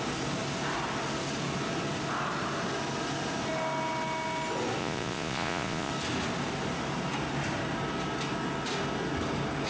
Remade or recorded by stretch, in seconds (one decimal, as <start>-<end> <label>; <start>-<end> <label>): 0.0-4.8 recorded; 4.8-5.9 remade; 5.9-9.7 recorded